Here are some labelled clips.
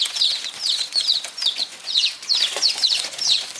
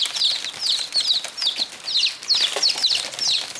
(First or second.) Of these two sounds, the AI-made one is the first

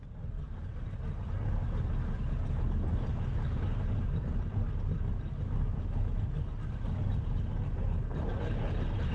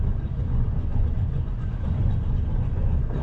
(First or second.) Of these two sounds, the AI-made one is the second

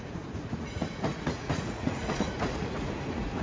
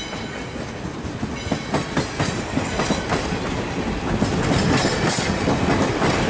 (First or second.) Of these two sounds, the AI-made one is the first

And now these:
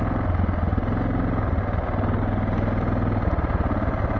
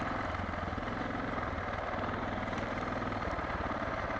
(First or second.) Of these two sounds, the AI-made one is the second